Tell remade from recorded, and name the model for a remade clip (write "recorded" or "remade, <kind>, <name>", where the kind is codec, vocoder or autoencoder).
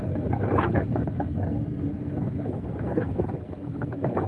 remade, codec, SNAC